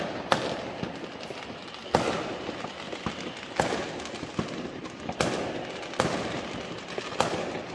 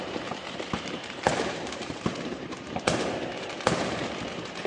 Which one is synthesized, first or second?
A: second